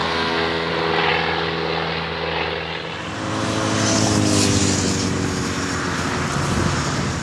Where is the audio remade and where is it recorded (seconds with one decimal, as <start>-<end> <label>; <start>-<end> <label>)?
0.0-0.7 remade; 0.7-7.2 recorded